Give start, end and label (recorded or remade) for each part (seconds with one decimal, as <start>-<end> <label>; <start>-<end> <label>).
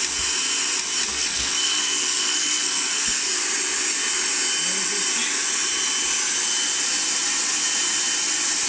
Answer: 0.0-1.1 recorded; 1.1-3.3 remade; 3.3-8.7 recorded